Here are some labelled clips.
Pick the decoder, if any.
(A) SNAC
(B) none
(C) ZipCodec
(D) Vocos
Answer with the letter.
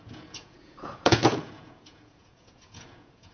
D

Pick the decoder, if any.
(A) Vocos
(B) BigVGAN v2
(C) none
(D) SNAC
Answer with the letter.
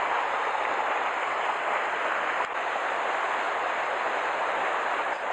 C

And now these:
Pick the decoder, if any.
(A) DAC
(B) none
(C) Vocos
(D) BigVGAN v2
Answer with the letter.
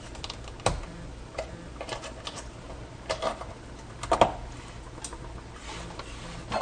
B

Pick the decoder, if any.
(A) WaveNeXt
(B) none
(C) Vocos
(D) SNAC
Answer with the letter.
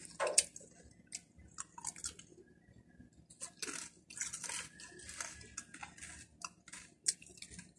B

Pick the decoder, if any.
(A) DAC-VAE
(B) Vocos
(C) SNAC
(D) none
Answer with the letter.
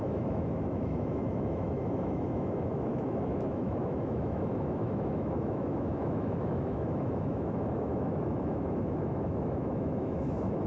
A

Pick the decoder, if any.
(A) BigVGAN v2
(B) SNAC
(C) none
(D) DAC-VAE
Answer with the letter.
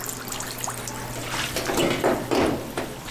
C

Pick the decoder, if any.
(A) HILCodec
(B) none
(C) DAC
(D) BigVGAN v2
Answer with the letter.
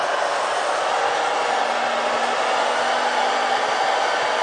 B